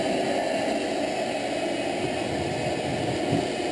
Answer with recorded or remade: recorded